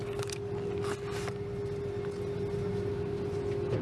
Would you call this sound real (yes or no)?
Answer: yes